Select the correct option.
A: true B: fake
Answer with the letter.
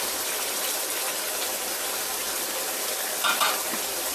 A